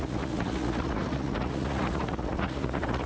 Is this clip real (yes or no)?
no